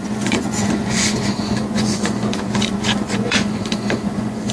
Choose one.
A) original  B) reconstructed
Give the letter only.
B